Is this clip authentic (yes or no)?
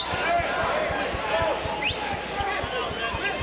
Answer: yes